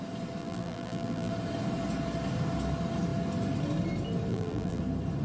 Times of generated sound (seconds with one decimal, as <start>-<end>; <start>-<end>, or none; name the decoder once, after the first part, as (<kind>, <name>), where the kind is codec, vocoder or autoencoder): 0.4-1.3 (vocoder, BigVGAN v2); 4.3-4.8